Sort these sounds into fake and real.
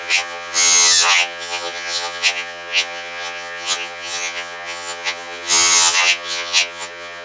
fake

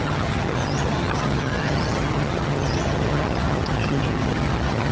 fake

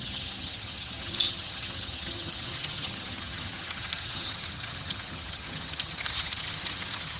fake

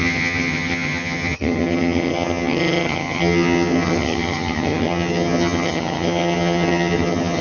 fake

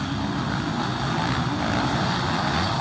real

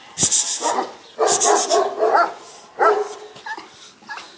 real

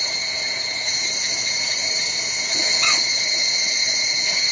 fake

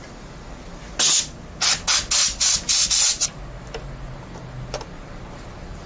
real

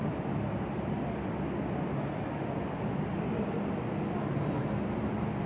real